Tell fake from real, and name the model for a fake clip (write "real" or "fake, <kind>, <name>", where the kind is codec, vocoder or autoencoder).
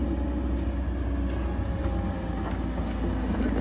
real